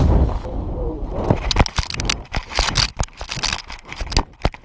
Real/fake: real